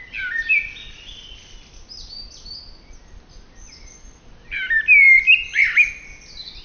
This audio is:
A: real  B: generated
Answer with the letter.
A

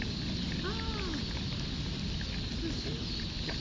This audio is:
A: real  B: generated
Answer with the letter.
A